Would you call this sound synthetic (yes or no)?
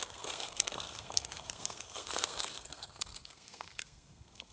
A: yes